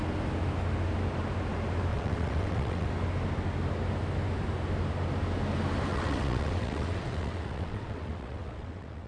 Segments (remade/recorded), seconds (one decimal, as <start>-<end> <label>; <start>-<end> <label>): 0.0-1.9 recorded; 1.9-2.9 remade; 2.9-5.9 recorded; 5.9-9.1 remade